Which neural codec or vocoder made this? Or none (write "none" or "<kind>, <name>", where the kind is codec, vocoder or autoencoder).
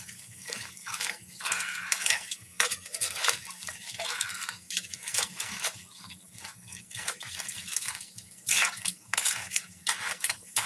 codec, SNAC